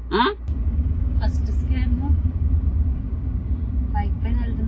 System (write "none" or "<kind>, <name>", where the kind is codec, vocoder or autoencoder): none